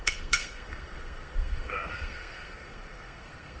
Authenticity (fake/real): fake